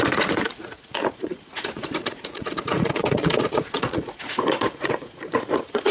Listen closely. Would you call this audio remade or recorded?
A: remade